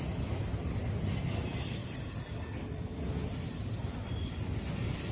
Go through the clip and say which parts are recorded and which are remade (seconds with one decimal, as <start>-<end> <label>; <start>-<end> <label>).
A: 0.0-5.1 recorded